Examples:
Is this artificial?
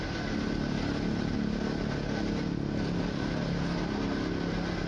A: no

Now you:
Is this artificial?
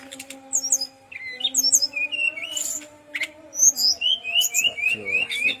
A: no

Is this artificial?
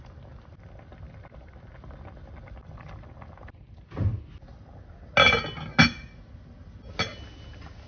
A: no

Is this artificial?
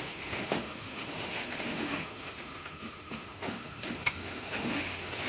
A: yes